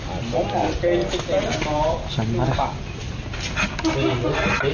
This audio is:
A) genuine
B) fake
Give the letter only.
A